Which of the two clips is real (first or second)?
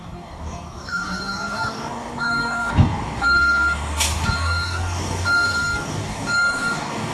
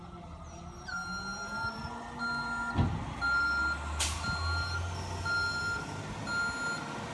second